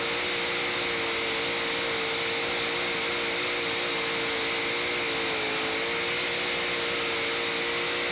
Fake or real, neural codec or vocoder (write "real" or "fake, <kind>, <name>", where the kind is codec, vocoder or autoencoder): real